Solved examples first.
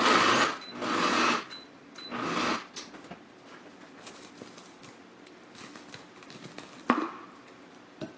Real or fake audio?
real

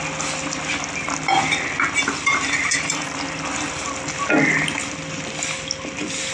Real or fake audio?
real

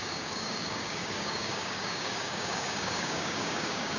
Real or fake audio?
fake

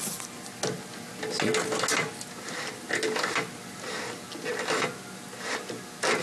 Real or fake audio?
real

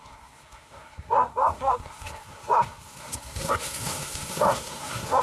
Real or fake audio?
fake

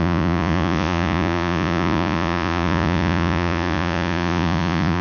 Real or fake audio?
fake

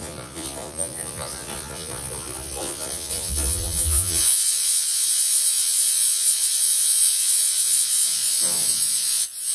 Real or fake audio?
fake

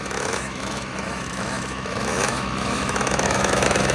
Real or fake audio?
fake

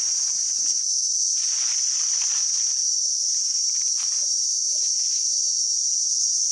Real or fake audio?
real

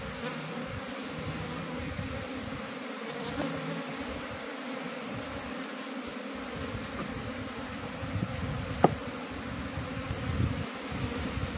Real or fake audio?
real